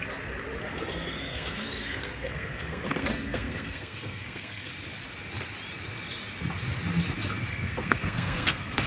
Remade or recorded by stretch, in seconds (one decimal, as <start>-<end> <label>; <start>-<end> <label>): 0.0-0.6 recorded; 0.6-4.7 remade; 4.7-7.5 recorded; 7.5-8.9 remade